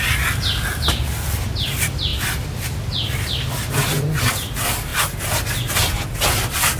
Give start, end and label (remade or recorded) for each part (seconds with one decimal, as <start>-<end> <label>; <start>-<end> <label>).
0.0-6.8 recorded